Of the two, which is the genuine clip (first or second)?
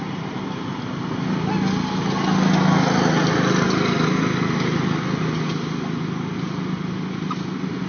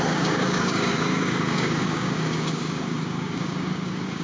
first